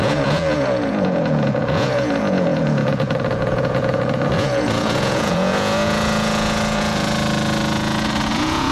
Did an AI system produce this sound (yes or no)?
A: yes